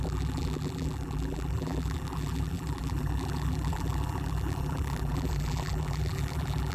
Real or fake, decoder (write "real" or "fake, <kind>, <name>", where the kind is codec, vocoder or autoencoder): fake, vocoder, BigVGAN v2